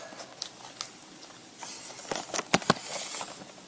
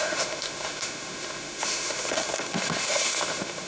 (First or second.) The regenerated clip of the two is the second